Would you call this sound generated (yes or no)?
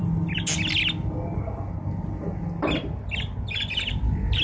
no